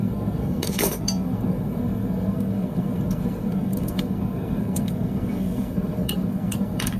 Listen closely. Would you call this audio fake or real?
fake